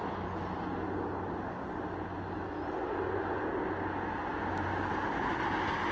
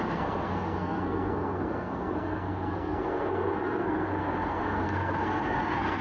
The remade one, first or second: second